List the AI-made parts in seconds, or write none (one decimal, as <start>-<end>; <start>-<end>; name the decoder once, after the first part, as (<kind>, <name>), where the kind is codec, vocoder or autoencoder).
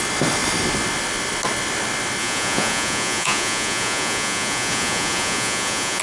2.2-6.0 (vocoder, Vocos)